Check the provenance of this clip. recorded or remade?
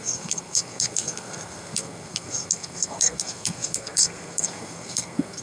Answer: remade